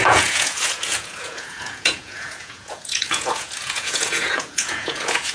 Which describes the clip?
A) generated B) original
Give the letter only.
A